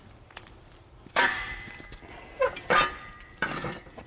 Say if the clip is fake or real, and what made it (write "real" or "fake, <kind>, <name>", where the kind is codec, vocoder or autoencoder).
fake, vocoder, BigVGAN v2